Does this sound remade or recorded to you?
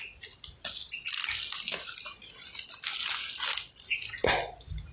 recorded